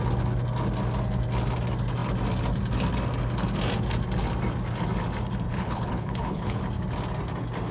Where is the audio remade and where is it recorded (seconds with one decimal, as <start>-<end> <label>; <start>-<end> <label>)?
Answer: 0.0-5.5 recorded; 5.5-6.6 remade; 6.6-7.7 recorded